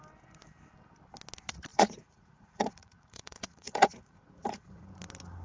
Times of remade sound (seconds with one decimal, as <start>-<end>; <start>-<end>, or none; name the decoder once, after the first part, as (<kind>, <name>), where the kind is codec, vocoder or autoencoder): 1.7-4.9 (vocoder, Vocos)